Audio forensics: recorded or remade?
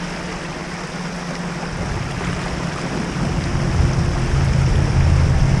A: recorded